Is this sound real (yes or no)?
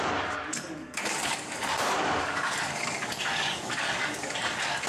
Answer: no